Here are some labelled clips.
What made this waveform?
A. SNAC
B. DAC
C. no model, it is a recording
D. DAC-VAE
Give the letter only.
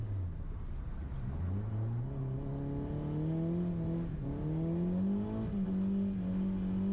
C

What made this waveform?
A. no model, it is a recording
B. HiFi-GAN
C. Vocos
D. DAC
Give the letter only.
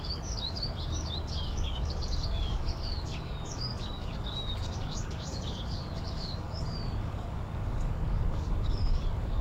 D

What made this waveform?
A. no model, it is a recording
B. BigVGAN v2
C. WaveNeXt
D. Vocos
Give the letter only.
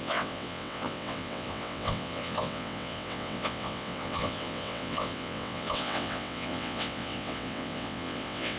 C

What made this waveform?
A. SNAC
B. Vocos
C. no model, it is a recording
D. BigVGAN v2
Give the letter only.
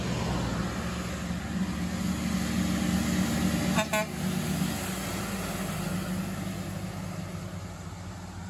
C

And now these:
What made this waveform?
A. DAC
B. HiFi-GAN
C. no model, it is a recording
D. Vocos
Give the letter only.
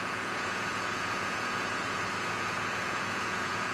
D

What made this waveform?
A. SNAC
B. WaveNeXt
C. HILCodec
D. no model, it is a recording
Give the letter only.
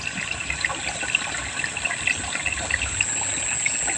D